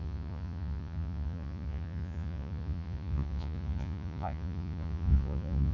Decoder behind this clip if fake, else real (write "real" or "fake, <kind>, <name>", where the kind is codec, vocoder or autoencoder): fake, vocoder, Vocos